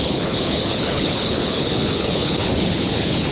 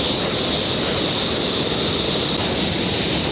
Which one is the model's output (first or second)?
first